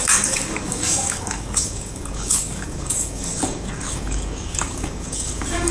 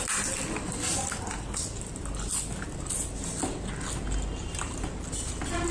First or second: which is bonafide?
second